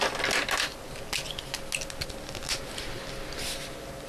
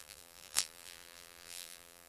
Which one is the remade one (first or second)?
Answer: second